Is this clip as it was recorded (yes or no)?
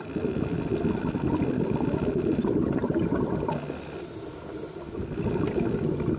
yes